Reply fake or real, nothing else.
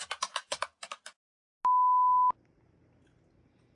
real